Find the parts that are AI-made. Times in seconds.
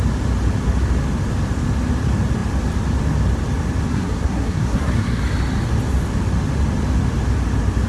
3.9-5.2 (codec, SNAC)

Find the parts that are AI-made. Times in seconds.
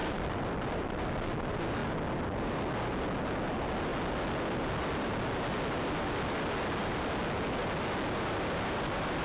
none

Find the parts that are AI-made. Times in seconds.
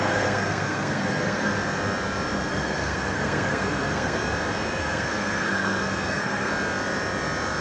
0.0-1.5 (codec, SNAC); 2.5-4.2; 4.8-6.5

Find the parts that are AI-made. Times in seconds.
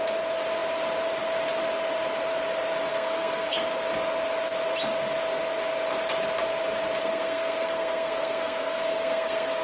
2.9-3.5 (codec, SNAC); 7.0-9.6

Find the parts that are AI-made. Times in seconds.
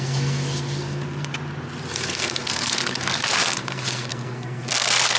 0.0-1.3 (codec, SNAC); 1.9-5.2